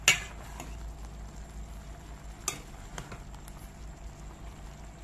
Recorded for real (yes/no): yes